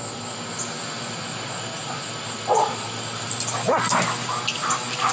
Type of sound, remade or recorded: recorded